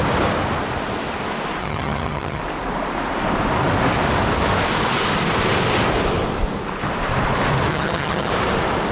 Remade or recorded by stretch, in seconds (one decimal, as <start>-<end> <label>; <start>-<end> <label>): 0.0-1.6 recorded; 1.6-2.4 remade; 2.4-7.7 recorded; 7.7-8.3 remade; 8.3-8.9 recorded